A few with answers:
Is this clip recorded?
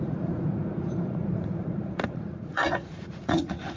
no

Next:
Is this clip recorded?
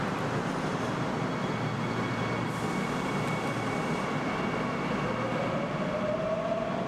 yes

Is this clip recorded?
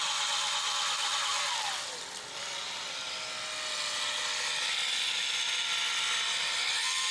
yes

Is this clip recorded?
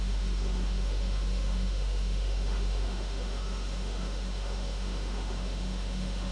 no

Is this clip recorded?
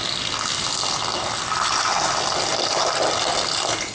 yes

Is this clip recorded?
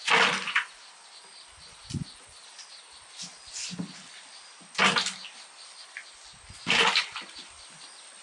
yes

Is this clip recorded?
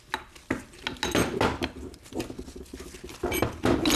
yes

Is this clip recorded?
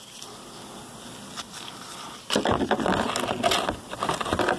yes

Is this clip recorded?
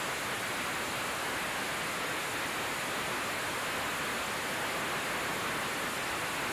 yes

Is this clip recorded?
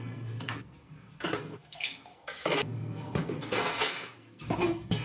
no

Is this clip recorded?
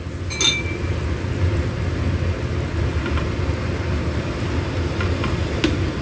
yes